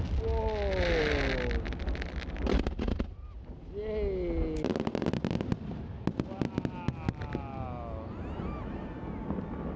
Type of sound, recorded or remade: recorded